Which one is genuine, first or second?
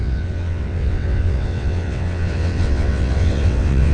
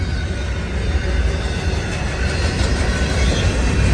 second